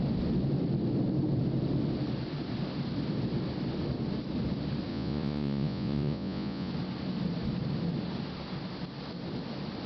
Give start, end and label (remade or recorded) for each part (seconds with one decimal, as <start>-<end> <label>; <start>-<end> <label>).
0.0-4.9 recorded; 4.9-6.7 remade; 6.7-9.9 recorded